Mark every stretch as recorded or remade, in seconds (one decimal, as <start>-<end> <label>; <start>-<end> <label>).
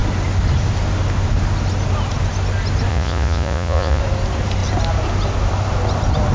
0.0-2.9 recorded; 2.9-4.0 remade; 4.0-6.3 recorded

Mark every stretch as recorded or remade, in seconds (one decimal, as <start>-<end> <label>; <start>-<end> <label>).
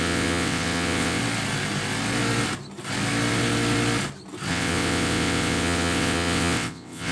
0.0-1.2 remade; 1.2-4.5 recorded; 4.5-7.1 remade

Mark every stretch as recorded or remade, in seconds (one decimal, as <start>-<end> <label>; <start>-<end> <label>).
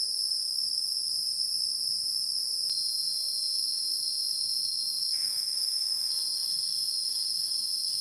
0.0-0.4 recorded; 0.4-1.1 remade; 1.1-3.5 recorded; 3.5-8.0 remade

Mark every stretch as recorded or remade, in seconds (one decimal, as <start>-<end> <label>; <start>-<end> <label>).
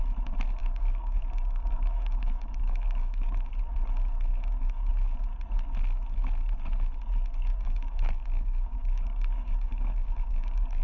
0.0-0.6 recorded; 0.6-3.5 remade; 3.5-4.3 recorded; 4.3-4.9 remade; 4.9-7.5 recorded; 7.5-10.8 remade